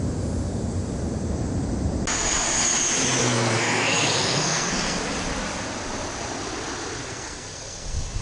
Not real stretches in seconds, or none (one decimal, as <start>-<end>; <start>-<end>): 3.2-5.0; 7.0-8.2